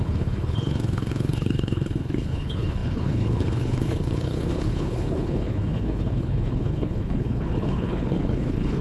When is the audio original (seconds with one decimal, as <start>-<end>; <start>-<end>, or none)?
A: none